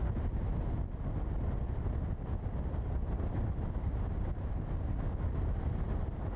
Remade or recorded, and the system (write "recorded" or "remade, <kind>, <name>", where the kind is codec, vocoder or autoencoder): recorded